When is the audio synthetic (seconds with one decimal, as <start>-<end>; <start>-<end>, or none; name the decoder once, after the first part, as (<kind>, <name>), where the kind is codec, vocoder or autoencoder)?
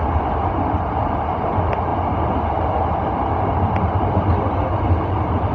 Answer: none